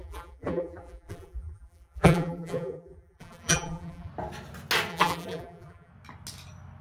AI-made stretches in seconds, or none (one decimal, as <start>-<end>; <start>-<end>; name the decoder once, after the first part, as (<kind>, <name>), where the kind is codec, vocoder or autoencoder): 0.0-4.1 (vocoder, BigVGAN v2); 4.9-5.9